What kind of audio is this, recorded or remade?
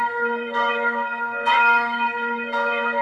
remade